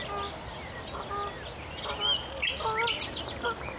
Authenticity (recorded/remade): recorded